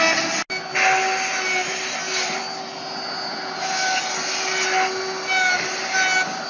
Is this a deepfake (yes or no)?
no